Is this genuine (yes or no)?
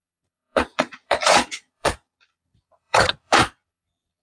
no